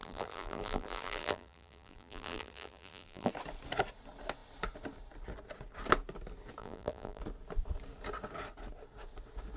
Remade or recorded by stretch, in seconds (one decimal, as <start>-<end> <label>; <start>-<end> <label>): 0.0-3.3 remade; 3.3-6.6 recorded; 6.6-7.2 remade; 7.2-9.6 recorded

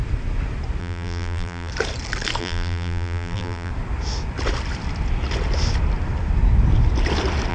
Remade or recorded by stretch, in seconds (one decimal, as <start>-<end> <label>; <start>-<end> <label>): 0.0-0.8 recorded; 0.8-1.7 remade; 1.7-2.4 recorded; 2.4-3.7 remade; 3.7-7.5 recorded

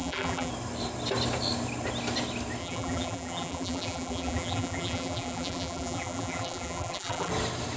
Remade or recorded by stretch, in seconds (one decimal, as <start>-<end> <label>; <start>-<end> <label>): 0.0-0.5 remade; 0.5-2.6 recorded; 2.6-7.3 remade; 7.3-7.8 recorded

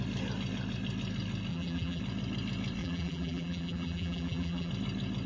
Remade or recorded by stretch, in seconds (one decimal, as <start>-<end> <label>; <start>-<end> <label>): 0.0-1.5 recorded; 1.5-2.0 remade; 2.0-2.8 recorded; 2.8-4.7 remade; 4.7-5.3 recorded

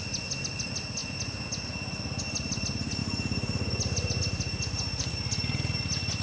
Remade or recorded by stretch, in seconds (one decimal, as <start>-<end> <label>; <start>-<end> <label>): 0.0-6.2 recorded

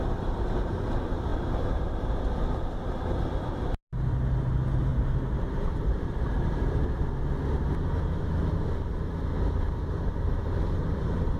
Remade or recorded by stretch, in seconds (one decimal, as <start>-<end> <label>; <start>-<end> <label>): 0.0-1.3 recorded; 1.3-3.1 remade; 3.1-4.9 recorded; 4.9-7.1 remade; 7.1-11.4 recorded

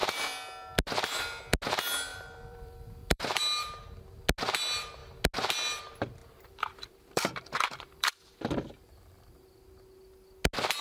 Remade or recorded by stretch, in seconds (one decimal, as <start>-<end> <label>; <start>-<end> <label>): 0.0-2.1 recorded; 2.1-3.4 remade; 3.4-6.2 recorded; 6.2-8.4 remade; 8.4-10.8 recorded

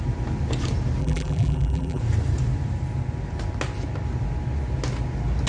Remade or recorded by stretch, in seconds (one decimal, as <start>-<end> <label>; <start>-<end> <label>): 0.0-1.0 recorded; 1.0-2.0 remade; 2.0-5.5 recorded